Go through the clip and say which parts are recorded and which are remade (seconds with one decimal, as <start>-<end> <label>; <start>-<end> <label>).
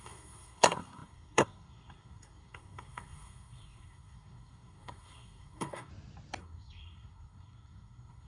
0.0-5.9 remade; 5.9-6.4 recorded; 6.4-8.3 remade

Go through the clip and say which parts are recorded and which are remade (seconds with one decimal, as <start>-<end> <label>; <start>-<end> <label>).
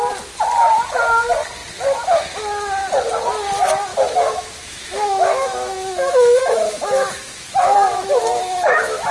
0.0-3.9 recorded; 3.9-9.1 remade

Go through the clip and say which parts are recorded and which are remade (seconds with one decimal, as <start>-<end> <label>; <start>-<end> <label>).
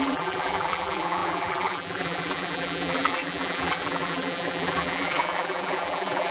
0.0-6.3 remade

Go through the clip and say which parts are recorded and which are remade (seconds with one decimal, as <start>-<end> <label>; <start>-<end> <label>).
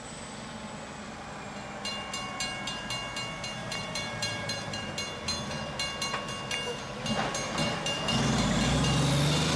0.0-3.6 recorded; 3.6-4.9 remade; 4.9-7.6 recorded; 7.6-9.1 remade; 9.1-9.6 recorded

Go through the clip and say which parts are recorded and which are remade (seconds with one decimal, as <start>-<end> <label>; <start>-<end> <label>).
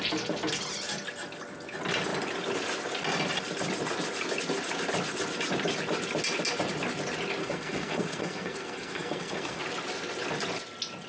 0.0-7.4 recorded; 7.4-9.6 remade; 9.6-11.1 recorded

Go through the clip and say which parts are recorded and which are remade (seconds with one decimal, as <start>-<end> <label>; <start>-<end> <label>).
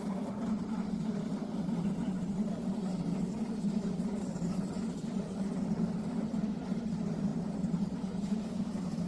0.0-9.1 recorded